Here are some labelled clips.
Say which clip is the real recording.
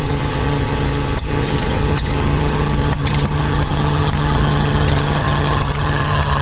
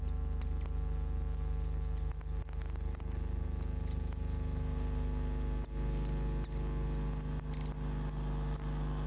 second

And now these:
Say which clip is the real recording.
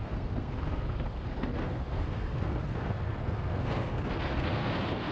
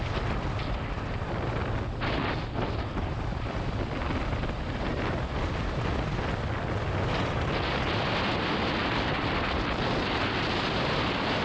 second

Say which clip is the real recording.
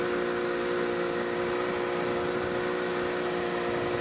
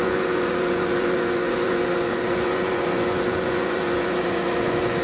first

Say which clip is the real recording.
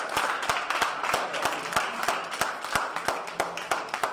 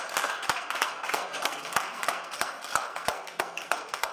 first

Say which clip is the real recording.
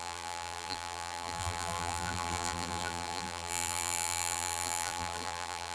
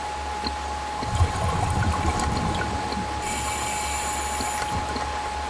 second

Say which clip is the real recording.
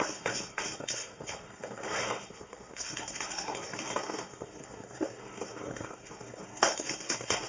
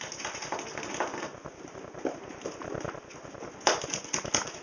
second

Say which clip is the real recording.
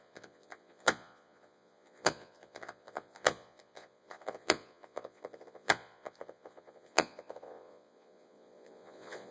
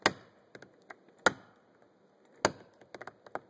second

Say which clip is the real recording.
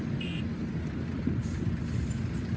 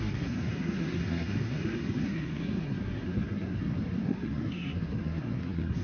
first